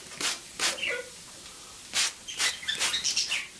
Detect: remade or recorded recorded